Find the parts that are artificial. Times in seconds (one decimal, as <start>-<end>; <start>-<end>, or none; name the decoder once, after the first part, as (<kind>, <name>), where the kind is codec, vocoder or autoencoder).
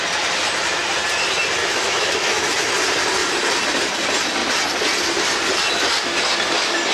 1.6-2.7 (autoencoder, DAC-VAE)